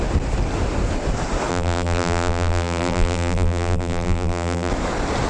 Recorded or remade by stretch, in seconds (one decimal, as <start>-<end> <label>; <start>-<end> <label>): 0.0-1.5 recorded; 1.5-4.7 remade; 4.7-5.3 recorded